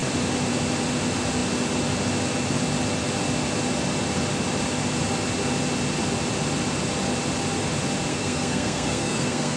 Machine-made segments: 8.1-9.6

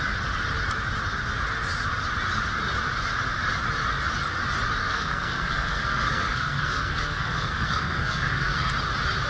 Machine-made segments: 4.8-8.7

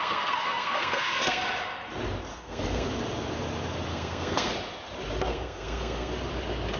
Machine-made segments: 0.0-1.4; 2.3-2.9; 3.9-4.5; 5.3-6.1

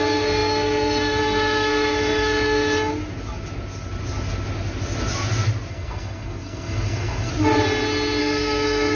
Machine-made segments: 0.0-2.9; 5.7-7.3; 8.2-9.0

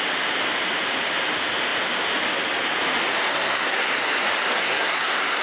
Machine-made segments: 3.3-3.9; 4.5-5.4